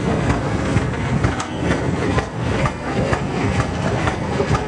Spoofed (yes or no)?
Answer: yes